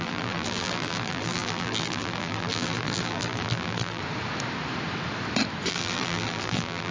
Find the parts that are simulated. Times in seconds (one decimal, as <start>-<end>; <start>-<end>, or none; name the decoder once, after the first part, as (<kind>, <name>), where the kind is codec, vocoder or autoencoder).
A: 0.0-4.0 (vocoder, BigVGAN v2); 5.7-6.9